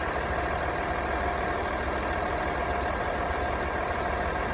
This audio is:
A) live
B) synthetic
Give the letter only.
A